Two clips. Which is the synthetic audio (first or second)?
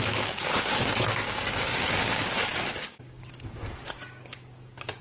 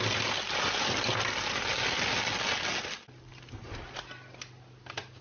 first